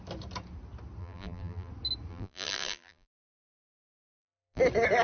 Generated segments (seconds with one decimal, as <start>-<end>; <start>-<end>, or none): 1.0-1.7; 2.1-4.6

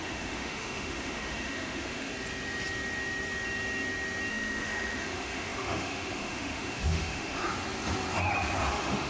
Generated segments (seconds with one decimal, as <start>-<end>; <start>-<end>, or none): 0.0-2.1; 4.3-7.4; 8.7-9.1